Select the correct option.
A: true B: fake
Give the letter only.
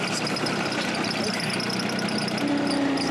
A